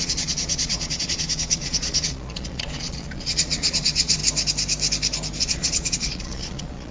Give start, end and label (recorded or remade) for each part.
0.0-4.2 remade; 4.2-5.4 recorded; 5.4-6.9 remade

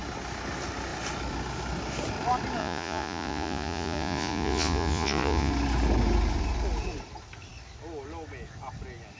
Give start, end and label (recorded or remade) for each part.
0.0-2.6 recorded; 2.6-5.5 remade; 5.5-9.2 recorded